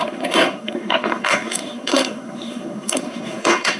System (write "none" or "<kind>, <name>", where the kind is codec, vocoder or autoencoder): codec, SNAC